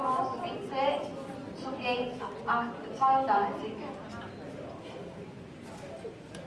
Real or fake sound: real